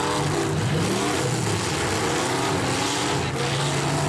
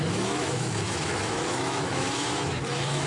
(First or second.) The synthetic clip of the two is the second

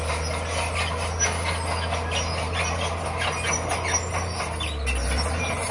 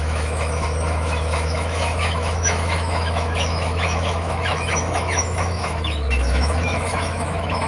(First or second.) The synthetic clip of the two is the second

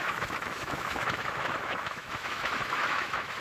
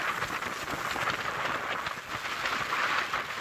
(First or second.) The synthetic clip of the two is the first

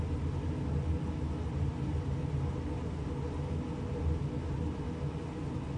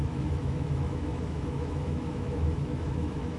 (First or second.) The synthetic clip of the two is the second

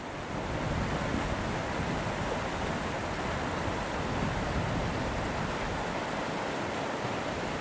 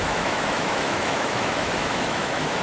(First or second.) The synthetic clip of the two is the second